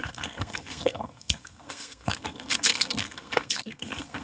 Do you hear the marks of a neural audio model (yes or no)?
yes